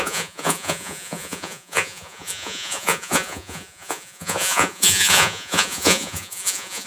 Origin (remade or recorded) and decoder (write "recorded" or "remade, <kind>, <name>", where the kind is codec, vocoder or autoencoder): remade, vocoder, Vocos